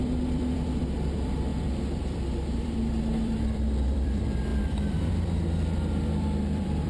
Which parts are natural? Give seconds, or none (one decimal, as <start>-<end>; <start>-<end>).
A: none